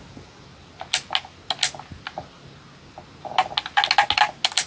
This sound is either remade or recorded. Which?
recorded